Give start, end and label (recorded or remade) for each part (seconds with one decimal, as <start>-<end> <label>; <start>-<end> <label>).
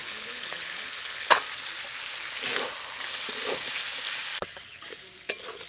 0.0-1.4 remade; 1.4-5.7 recorded